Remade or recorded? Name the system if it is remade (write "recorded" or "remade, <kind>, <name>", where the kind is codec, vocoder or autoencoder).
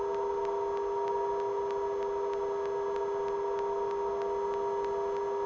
recorded